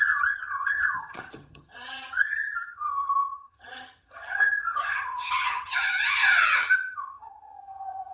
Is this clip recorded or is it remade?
remade